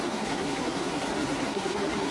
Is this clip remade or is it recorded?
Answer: remade